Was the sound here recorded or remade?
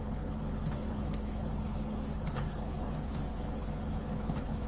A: remade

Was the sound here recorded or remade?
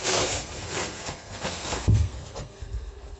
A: remade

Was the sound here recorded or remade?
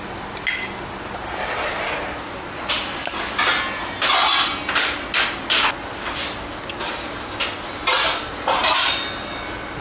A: recorded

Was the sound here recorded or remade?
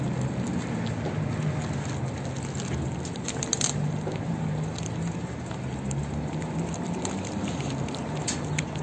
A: recorded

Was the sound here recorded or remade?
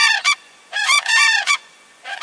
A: remade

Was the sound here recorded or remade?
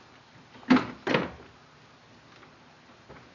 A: recorded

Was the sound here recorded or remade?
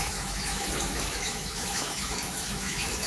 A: remade